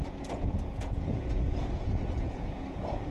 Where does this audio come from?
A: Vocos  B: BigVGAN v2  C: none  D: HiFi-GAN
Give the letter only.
A